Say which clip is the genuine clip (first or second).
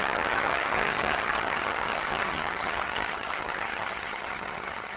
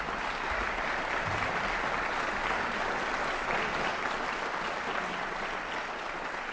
second